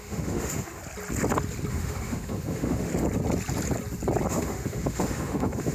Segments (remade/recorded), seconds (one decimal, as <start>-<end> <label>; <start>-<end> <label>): 0.0-0.8 remade; 0.8-1.7 recorded; 1.7-2.9 remade; 2.9-4.3 recorded; 4.3-5.7 remade